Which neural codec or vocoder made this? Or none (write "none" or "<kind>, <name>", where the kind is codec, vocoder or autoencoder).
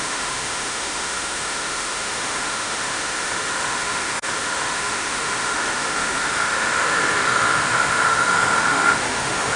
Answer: autoencoder, DAC-VAE